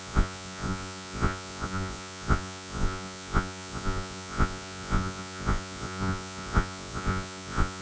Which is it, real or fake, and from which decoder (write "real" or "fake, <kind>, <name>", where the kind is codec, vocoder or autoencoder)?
fake, vocoder, Vocos